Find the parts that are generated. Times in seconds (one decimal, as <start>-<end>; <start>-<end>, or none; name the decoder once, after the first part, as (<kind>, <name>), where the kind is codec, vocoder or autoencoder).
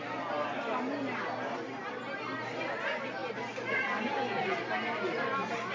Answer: none